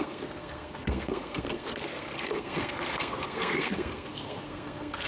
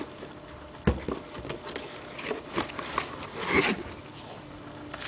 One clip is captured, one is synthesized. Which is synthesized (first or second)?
first